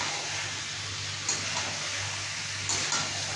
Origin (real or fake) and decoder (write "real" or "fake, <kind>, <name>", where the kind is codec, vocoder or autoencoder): real